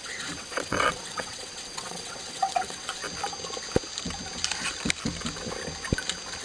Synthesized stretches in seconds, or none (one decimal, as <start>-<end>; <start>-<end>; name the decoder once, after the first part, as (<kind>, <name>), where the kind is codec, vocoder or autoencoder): 0.0-3.0 (vocoder, WaveNeXt)